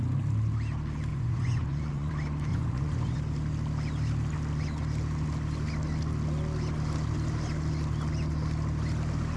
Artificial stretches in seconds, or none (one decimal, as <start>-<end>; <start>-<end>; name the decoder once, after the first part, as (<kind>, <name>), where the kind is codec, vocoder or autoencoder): 1.1-2.1 (vocoder, Vocos); 2.5-3.2